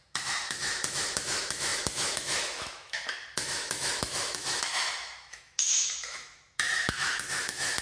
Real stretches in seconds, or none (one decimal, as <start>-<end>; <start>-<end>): none